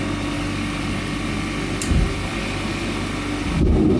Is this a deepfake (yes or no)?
no